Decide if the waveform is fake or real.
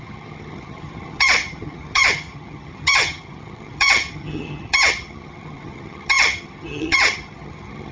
fake